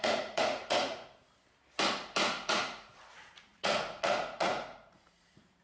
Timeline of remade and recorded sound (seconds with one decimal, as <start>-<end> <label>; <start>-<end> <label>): 0.0-1.3 remade; 1.3-2.5 recorded; 2.5-5.6 remade